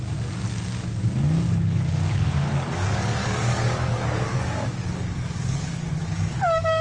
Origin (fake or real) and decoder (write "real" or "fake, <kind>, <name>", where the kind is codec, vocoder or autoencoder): fake, codec, DAC